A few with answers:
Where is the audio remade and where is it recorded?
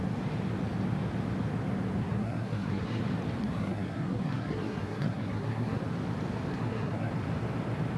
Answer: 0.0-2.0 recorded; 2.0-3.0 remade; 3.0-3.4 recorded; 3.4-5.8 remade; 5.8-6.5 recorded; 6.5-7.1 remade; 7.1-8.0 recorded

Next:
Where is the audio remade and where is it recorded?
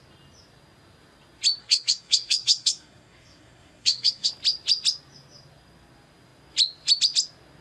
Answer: 0.0-1.6 recorded; 1.6-4.3 remade; 4.3-7.6 recorded